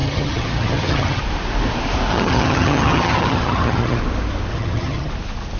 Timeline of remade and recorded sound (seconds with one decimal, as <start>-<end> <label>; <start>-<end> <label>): 0.0-1.2 remade; 1.2-2.1 recorded; 2.1-4.0 remade; 4.0-4.5 recorded; 4.5-5.1 remade; 5.1-5.6 recorded

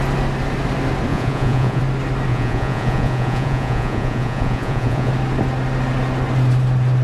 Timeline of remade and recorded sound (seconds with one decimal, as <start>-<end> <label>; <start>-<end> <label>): 0.0-1.1 recorded; 1.1-1.8 remade; 1.8-2.3 recorded; 2.3-5.1 remade; 5.1-7.0 recorded

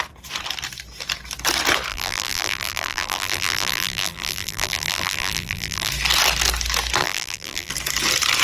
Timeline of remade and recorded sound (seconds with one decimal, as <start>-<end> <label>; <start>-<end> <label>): 0.0-1.9 recorded; 1.9-5.9 remade; 5.9-7.0 recorded; 7.0-7.7 remade; 7.7-8.4 recorded